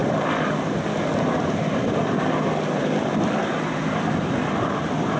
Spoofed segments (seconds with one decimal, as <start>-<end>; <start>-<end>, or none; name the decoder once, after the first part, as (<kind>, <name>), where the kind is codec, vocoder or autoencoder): 0.0-3.1 (vocoder, BigVGAN v2); 3.5-5.2